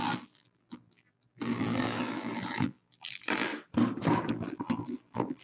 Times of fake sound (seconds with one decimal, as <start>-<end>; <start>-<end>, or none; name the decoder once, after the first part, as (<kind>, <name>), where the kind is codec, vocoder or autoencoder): 0.0-3.5 (vocoder, BigVGAN v2); 4.3-5.4